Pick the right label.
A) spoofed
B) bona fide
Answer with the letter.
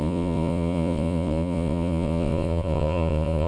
A